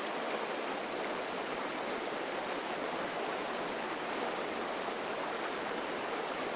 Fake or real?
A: real